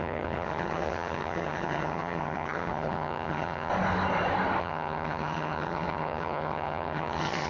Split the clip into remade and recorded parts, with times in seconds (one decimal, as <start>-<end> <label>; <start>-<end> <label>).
0.0-3.7 remade; 3.7-4.6 recorded; 4.6-7.5 remade